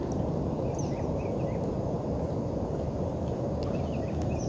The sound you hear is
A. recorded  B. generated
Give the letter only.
A